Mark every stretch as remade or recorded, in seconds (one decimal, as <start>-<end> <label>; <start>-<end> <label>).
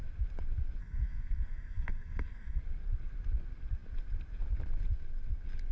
0.0-0.8 recorded; 0.8-2.6 remade; 2.6-5.7 recorded